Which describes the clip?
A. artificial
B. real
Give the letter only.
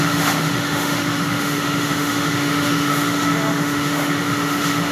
A